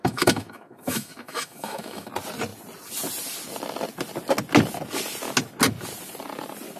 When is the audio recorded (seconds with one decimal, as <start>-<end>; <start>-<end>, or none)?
2.1-6.8